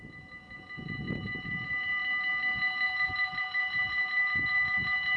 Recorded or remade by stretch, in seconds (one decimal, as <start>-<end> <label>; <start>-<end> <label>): 0.0-5.2 recorded